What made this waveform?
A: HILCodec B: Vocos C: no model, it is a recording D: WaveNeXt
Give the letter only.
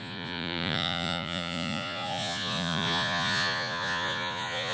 B